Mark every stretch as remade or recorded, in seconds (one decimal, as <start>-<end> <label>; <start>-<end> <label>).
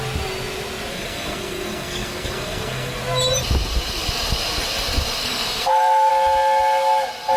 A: 0.0-0.9 recorded; 0.9-3.0 remade; 3.0-5.2 recorded; 5.2-6.1 remade; 6.1-7.4 recorded